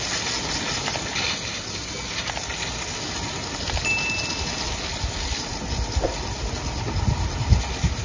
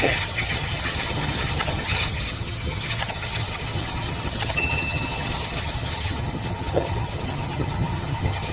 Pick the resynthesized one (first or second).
second